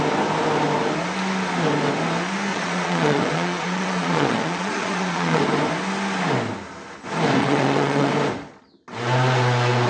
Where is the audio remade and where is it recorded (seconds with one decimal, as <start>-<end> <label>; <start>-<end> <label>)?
0.0-2.5 recorded; 2.5-5.4 remade; 5.4-7.4 recorded; 7.4-8.1 remade; 8.1-9.9 recorded